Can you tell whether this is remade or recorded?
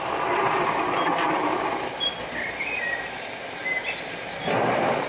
recorded